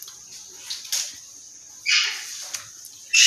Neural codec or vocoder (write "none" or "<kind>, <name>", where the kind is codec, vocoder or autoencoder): none